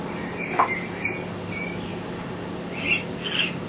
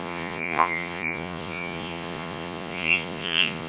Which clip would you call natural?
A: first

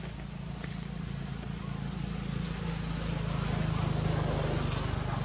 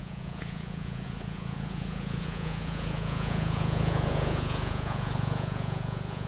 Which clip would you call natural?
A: first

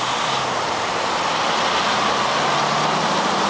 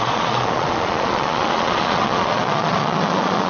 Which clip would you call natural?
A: first